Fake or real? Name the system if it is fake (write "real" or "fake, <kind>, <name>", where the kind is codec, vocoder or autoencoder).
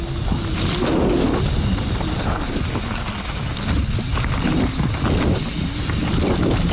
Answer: real